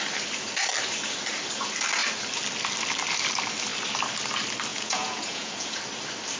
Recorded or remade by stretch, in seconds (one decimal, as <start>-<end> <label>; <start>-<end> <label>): 0.0-4.7 recorded; 4.7-5.8 remade; 5.8-6.4 recorded